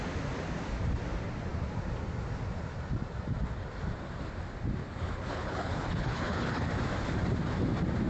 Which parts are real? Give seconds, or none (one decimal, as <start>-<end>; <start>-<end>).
0.0-4.8; 6.7-8.1